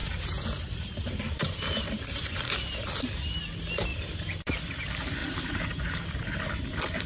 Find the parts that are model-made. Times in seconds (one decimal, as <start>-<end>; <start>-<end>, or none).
0.0-2.9; 3.9-4.5; 5.2-6.4